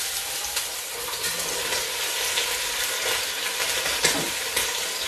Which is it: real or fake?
real